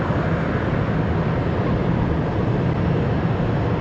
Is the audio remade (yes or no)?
no